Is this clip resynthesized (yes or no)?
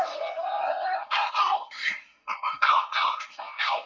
yes